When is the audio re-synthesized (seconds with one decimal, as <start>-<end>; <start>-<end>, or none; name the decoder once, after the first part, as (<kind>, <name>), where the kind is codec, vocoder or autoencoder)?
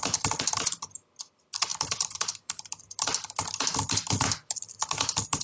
1.7-2.8 (vocoder, BigVGAN v2)